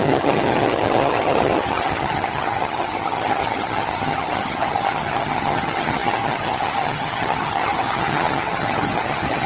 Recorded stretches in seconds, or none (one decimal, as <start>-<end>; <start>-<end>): none